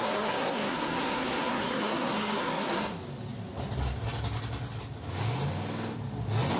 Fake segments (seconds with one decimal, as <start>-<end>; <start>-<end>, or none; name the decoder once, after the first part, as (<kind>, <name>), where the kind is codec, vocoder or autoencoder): 0.0-2.9 (codec, SNAC)